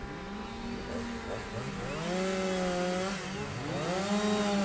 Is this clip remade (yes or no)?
no